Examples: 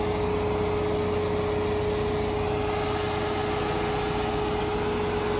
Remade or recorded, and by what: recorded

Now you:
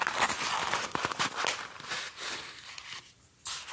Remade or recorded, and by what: recorded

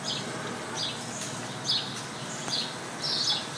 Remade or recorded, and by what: recorded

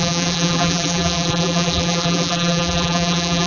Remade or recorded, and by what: remade, vocoder, BigVGAN v2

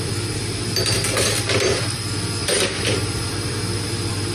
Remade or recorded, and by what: remade, vocoder, BigVGAN v2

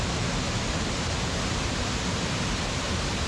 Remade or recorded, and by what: remade, vocoder, BigVGAN v2